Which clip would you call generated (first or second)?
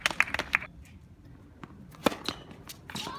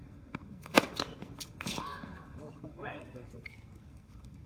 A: second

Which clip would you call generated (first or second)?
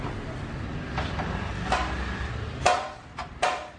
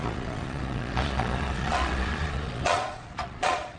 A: second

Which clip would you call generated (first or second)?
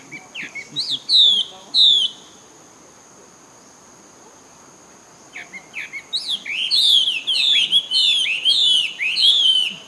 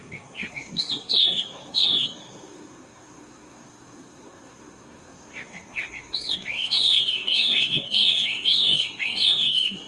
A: second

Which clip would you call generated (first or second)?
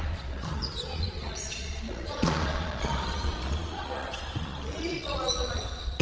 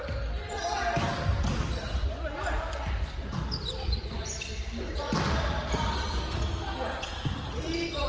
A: first